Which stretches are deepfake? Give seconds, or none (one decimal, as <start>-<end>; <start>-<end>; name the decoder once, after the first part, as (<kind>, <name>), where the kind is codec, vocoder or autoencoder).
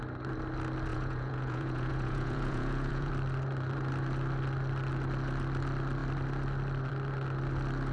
0.9-3.1 (vocoder, Vocos)